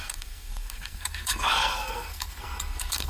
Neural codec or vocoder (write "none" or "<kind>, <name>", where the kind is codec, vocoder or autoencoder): codec, SNAC